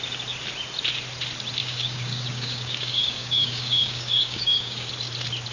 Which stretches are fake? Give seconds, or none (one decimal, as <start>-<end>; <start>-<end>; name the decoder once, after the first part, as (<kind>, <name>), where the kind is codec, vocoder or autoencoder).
1.6-4.9 (codec, DAC)